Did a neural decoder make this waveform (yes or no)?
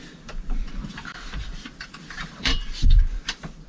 yes